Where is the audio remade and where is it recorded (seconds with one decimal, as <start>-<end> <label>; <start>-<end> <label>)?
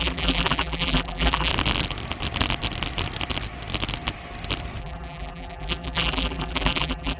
0.0-1.5 remade; 1.5-4.8 recorded; 4.8-7.2 remade